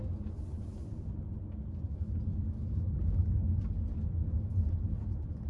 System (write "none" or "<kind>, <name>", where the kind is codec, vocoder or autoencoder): none